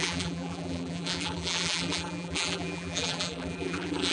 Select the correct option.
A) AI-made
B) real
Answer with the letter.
A